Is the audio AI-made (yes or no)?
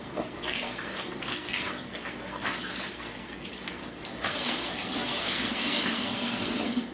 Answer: yes